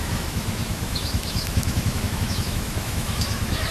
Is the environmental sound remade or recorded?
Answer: remade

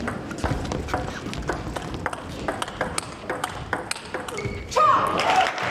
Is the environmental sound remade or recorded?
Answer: recorded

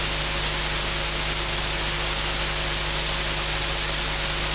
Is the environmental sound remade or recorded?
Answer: recorded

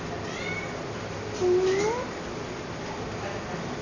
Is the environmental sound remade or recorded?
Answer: recorded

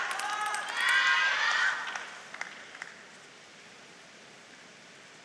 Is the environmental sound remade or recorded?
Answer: recorded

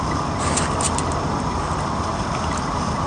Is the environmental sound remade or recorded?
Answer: recorded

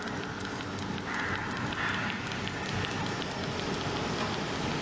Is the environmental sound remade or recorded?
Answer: recorded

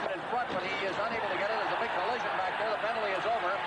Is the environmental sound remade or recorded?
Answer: recorded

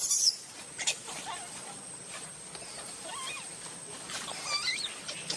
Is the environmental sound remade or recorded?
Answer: recorded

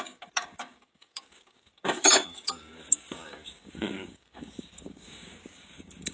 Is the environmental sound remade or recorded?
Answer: remade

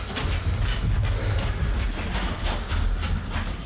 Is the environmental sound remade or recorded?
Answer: recorded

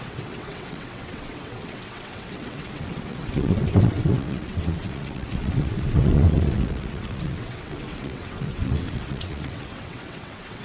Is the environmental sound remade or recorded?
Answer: remade